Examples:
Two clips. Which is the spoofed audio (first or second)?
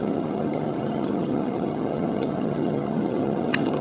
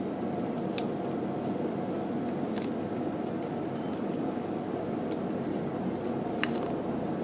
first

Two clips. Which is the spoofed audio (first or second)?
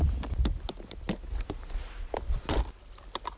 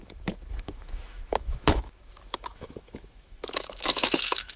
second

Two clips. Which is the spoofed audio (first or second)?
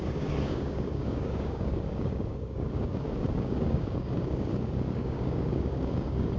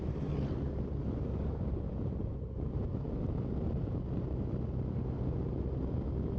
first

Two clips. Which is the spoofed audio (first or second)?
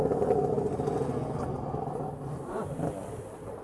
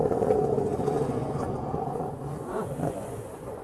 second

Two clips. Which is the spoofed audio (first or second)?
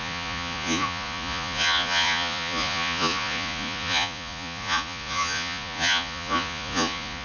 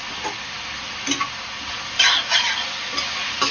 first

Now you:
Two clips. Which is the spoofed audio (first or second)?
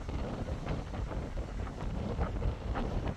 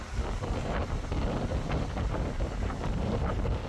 first